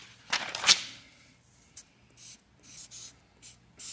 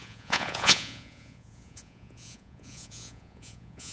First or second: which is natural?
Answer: first